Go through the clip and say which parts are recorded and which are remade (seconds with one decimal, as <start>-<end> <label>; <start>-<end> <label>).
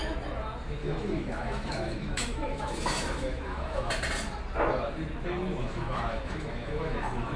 0.0-0.8 recorded; 0.8-3.9 remade; 3.9-5.6 recorded; 5.6-7.4 remade